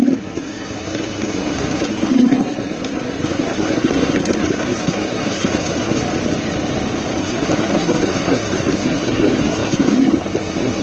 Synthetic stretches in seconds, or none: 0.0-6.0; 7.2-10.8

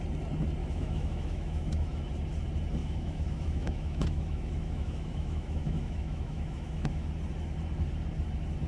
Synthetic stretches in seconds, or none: 0.6-2.0; 2.8-7.1

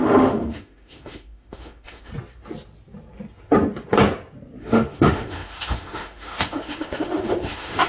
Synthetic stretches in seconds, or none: 0.0-2.1; 4.6-7.9